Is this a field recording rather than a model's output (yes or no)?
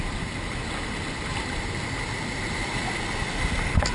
yes